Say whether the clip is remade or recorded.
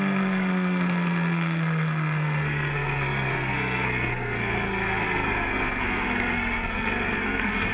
remade